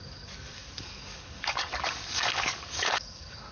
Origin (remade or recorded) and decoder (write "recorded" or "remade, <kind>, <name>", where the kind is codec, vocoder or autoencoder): remade, codec, DAC